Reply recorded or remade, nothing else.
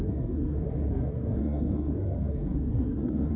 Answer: remade